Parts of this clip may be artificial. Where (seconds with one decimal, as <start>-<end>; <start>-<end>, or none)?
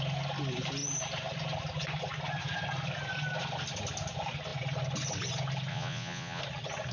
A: 5.7-6.4